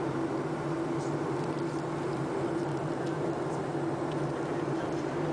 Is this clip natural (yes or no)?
yes